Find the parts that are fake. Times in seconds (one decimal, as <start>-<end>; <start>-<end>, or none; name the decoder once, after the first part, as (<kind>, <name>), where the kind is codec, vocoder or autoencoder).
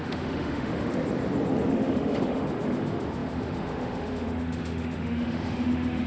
0.0-1.0 (autoencoder, DAC-VAE); 1.7-6.1